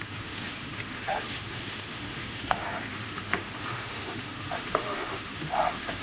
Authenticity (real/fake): fake